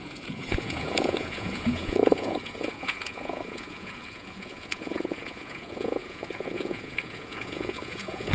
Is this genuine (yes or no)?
no